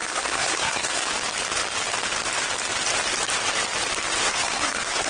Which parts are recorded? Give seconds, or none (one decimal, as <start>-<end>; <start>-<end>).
1.1-4.2